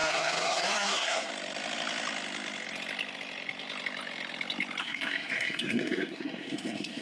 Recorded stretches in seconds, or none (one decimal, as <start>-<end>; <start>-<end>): 1.3-4.8